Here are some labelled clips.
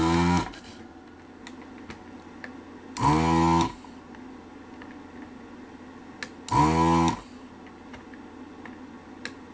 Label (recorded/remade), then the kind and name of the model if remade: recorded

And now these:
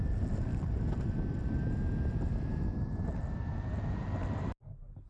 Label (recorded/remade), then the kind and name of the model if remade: recorded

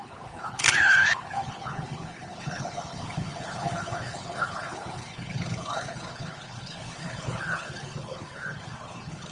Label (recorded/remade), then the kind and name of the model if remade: remade, codec, HILCodec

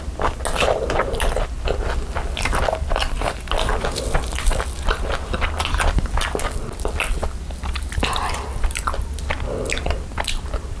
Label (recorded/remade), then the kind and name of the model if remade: recorded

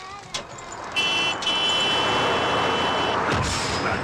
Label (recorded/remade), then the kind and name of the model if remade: remade, vocoder, BigVGAN v2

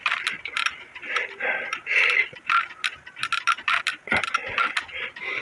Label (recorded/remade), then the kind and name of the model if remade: recorded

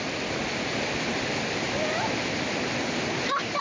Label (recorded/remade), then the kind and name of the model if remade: recorded